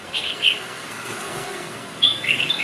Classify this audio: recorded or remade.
remade